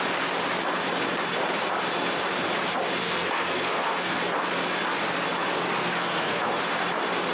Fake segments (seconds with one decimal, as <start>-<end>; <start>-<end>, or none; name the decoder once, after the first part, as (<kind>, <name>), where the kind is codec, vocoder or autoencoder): 3.0-4.2 (codec, SNAC); 5.8-6.4